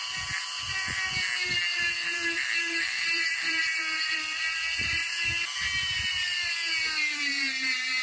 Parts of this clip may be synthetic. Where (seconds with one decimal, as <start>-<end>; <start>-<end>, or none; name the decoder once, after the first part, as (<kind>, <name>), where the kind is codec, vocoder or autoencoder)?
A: 0.0-1.1 (vocoder, BigVGAN v2); 1.7-6.5